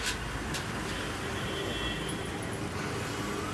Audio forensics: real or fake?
real